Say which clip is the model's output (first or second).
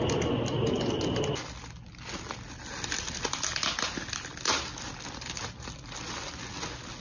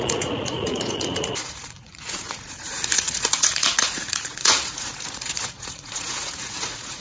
second